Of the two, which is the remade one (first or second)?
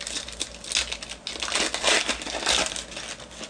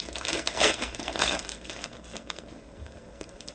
second